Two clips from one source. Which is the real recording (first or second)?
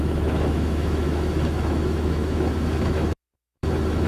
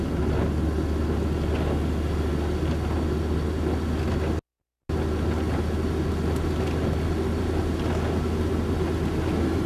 second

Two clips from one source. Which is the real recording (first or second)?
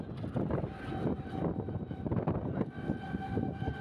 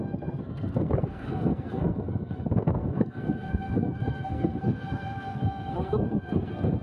first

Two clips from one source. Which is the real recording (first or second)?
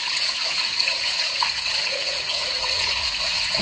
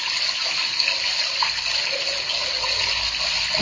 second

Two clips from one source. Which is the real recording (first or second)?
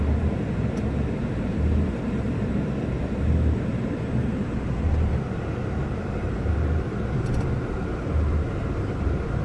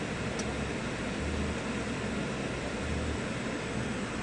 second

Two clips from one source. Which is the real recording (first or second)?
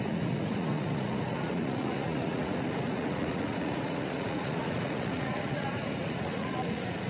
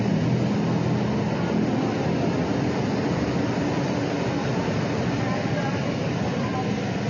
second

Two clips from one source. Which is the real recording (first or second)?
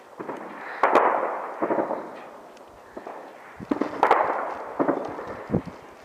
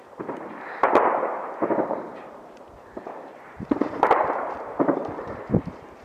first